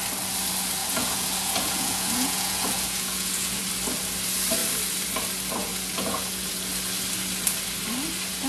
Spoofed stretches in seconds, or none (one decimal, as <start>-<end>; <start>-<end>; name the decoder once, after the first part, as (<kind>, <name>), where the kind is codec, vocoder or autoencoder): 0.8-3.6 (vocoder, Vocos); 5.7-6.5